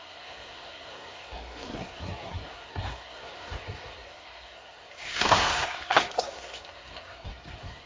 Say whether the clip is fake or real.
fake